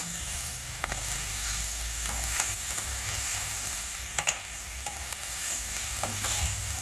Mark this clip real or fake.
fake